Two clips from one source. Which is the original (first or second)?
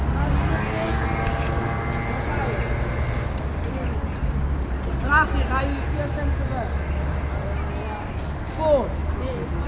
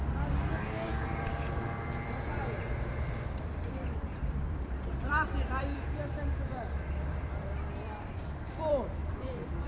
first